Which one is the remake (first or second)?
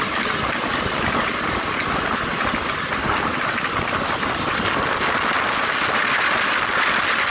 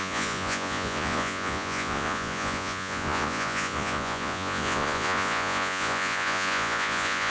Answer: second